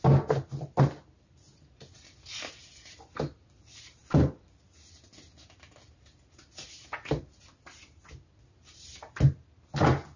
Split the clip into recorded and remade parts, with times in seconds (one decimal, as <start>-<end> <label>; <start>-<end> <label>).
0.0-10.2 recorded